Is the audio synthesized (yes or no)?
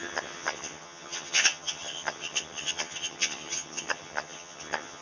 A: yes